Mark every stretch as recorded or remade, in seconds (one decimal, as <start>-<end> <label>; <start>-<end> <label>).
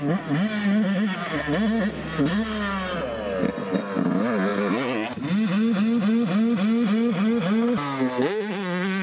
0.0-9.0 recorded